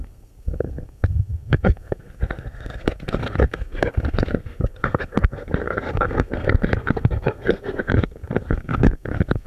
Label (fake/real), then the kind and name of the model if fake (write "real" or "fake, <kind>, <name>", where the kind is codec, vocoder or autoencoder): fake, codec, SNAC